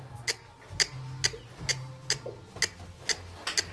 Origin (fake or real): real